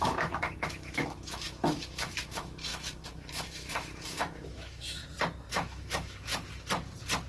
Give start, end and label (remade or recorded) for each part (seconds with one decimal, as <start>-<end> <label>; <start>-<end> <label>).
0.0-5.0 remade; 5.0-5.5 recorded; 5.5-6.3 remade; 6.3-7.3 recorded